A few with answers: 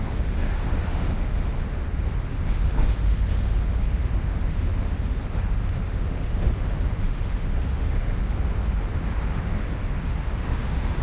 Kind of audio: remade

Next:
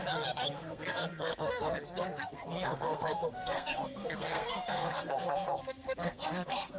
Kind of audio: remade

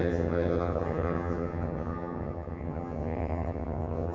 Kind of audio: remade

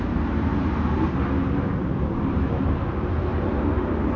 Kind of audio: remade